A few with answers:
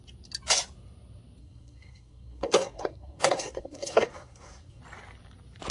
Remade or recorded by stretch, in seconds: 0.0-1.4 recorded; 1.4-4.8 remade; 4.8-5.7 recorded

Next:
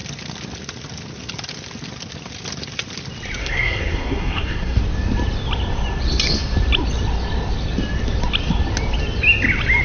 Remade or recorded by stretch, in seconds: 0.0-3.4 recorded; 3.4-4.8 remade; 4.8-9.8 recorded

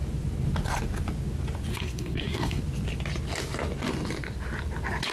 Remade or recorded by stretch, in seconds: 0.0-1.7 recorded; 1.7-2.6 remade; 2.6-5.1 recorded